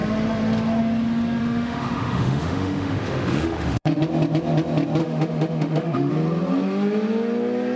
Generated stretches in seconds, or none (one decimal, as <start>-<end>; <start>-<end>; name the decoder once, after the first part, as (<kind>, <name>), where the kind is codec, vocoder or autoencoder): 1.4-4.0 (autoencoder, DAC-VAE); 5.0-6.1